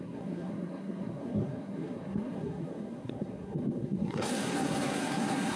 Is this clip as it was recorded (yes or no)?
no